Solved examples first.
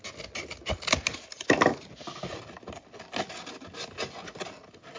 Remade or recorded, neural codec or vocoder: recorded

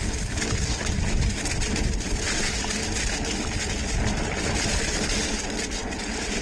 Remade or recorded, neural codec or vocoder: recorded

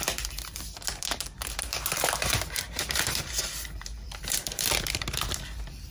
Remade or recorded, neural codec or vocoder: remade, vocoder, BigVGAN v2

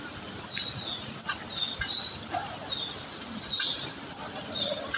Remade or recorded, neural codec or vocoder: recorded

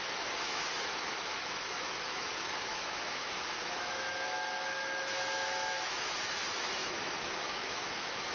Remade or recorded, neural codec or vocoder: remade, autoencoder, DAC-VAE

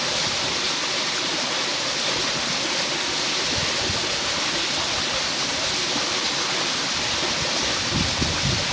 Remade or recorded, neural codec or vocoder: recorded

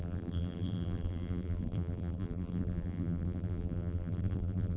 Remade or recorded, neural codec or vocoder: remade, vocoder, BigVGAN v2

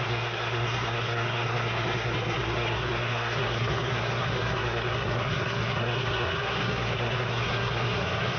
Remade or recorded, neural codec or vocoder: remade, codec, SNAC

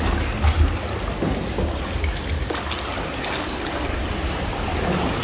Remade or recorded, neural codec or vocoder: recorded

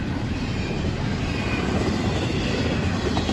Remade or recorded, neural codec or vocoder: recorded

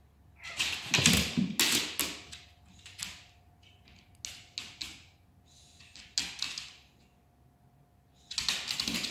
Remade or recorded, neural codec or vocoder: recorded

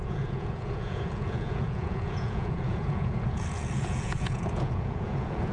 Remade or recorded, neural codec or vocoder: remade, vocoder, Vocos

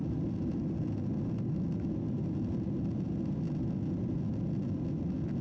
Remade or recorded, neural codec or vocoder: recorded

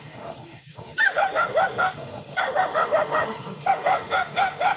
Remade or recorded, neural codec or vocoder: remade, autoencoder, DAC-VAE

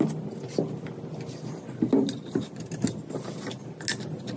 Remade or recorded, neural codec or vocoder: recorded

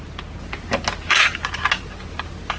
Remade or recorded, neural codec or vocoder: recorded